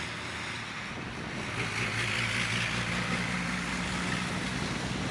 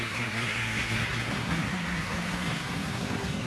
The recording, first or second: first